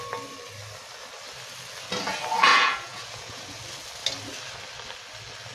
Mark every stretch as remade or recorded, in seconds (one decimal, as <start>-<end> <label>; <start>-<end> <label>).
0.0-2.5 recorded; 2.5-3.6 remade; 3.6-5.5 recorded

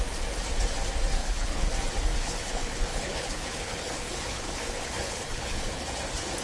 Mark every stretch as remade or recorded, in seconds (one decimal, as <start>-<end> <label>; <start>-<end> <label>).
0.0-1.2 recorded; 1.2-1.7 remade; 1.7-2.1 recorded; 2.1-5.9 remade; 5.9-6.4 recorded

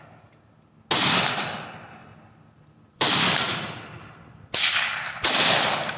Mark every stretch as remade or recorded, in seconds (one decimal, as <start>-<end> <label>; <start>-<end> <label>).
0.0-2.0 recorded; 2.0-4.2 remade; 4.2-6.0 recorded

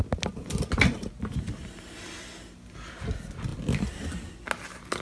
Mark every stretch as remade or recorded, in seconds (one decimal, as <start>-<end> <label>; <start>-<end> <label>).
0.0-5.0 recorded

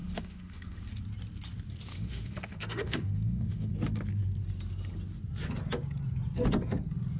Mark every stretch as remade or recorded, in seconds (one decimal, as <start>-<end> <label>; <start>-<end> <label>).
0.0-0.8 remade; 0.8-1.9 recorded; 1.9-3.7 remade; 3.7-7.2 recorded

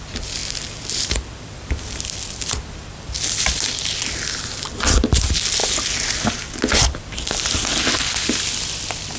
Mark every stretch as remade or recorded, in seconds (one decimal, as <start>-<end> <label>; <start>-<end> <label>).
0.0-5.6 remade; 5.6-7.9 recorded; 7.9-9.2 remade

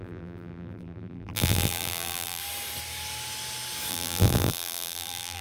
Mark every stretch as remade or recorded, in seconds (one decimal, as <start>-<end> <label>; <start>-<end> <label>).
0.0-2.4 remade; 2.4-3.9 recorded; 3.9-5.4 remade

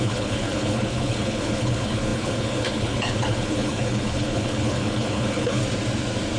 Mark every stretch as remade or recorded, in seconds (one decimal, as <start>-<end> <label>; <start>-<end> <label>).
0.0-5.6 remade; 5.6-6.4 recorded